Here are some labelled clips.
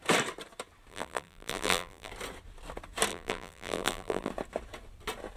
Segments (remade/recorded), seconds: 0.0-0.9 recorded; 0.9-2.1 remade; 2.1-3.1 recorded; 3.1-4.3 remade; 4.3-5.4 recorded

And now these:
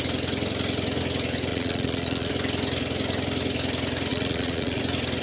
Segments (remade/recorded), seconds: 0.0-1.5 recorded; 1.5-2.3 remade; 2.3-4.1 recorded; 4.1-4.8 remade; 4.8-5.2 recorded

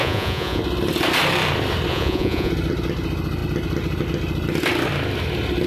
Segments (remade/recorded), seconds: 0.0-0.6 remade; 0.6-1.9 recorded; 1.9-2.5 remade; 2.5-5.7 recorded

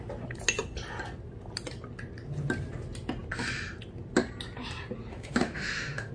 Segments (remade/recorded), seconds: 0.0-5.1 recorded; 5.1-6.1 remade

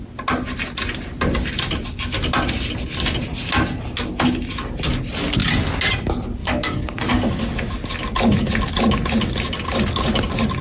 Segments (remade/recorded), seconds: 0.0-6.4 recorded; 6.4-7.1 remade; 7.1-10.6 recorded

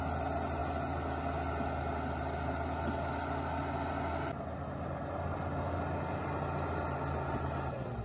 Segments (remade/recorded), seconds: 0.0-8.0 recorded